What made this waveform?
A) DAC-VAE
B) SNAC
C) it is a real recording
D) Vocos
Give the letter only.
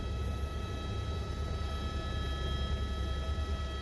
C